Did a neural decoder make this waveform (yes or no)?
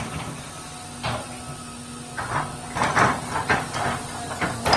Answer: no